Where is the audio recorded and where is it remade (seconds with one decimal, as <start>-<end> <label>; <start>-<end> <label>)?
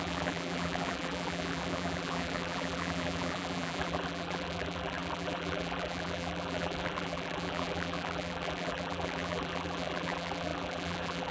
0.0-11.3 remade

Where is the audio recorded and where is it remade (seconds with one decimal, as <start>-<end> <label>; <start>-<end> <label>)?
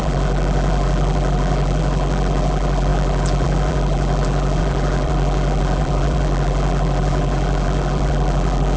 0.0-8.8 remade